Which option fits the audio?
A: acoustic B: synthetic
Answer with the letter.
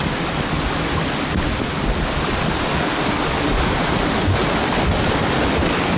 A